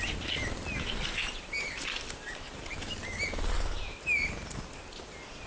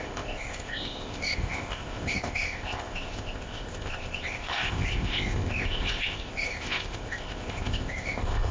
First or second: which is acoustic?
first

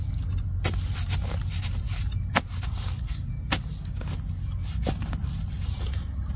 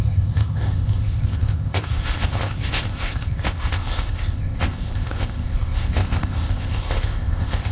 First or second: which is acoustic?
first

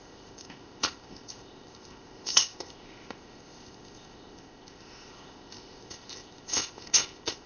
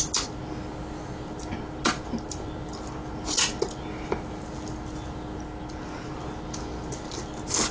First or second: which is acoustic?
second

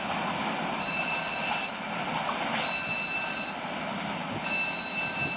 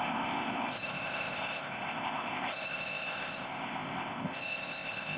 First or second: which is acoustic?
first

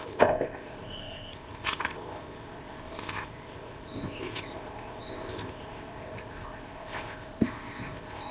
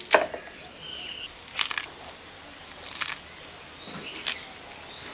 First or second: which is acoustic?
second